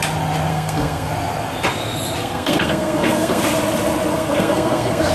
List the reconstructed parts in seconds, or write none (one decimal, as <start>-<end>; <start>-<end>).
0.5-1.1; 2.2-3.4; 4.1-5.1